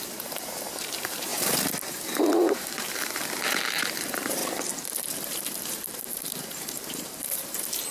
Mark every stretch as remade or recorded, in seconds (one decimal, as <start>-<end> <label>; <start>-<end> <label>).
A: 0.0-1.3 remade; 1.3-1.9 recorded; 1.9-4.4 remade; 4.4-5.2 recorded; 5.2-7.9 remade